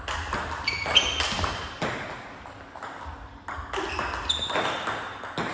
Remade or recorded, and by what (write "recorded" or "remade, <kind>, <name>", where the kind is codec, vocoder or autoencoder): recorded